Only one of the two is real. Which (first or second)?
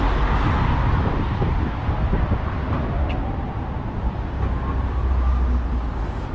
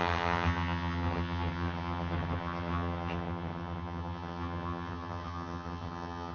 first